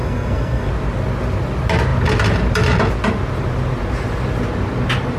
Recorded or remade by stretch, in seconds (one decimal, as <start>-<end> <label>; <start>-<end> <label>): 0.0-0.7 remade; 0.7-5.2 recorded